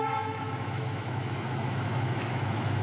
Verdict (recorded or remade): remade